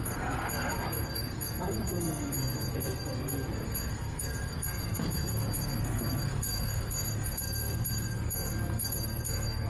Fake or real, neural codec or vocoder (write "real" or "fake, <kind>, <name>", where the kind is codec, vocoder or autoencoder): fake, codec, SNAC